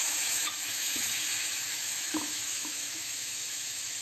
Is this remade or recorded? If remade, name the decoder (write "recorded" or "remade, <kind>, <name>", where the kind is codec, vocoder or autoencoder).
remade, autoencoder, DAC-VAE